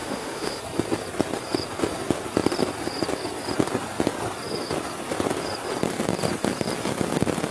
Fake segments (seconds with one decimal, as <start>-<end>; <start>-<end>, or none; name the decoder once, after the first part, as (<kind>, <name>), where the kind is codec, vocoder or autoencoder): 0.0-0.6 (autoencoder, DAC-VAE)